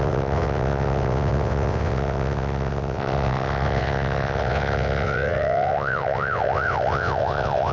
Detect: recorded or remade remade